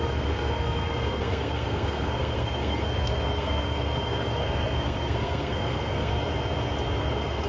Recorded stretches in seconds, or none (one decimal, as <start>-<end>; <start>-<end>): 6.1-7.0